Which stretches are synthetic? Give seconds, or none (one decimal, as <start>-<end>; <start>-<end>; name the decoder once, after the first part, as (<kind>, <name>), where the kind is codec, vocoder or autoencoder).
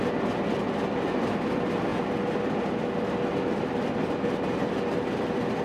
none